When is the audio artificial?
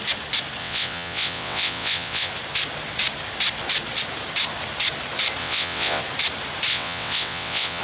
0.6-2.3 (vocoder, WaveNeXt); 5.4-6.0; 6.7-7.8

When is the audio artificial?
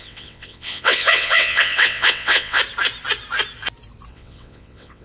0.0-2.6 (vocoder, WaveNeXt); 4.1-5.0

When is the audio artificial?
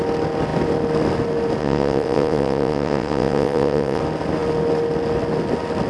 1.6-4.0 (vocoder, WaveNeXt)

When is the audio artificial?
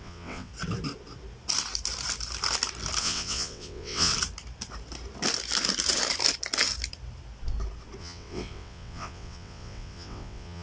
0.0-0.5 (vocoder, WaveNeXt); 3.0-4.1; 8.0-10.6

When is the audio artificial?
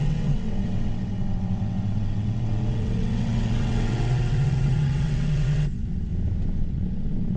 0.0-6.1 (vocoder, WaveNeXt); 6.6-7.4